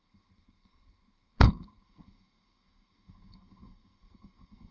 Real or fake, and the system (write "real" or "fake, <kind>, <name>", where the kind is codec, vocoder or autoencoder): fake, codec, SNAC